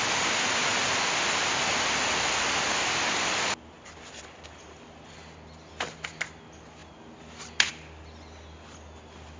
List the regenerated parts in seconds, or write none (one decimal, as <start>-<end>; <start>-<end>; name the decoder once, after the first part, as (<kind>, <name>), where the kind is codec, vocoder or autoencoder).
none